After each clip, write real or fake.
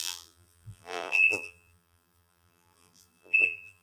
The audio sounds fake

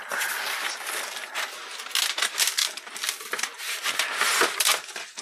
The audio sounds real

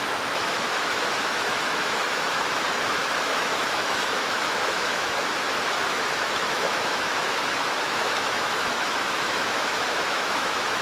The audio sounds fake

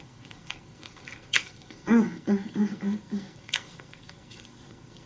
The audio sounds fake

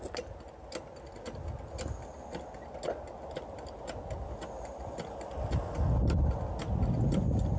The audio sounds real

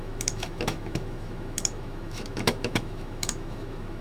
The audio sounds fake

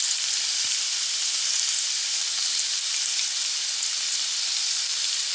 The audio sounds fake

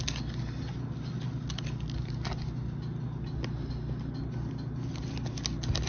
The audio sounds real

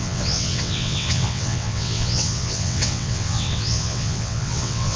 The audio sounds fake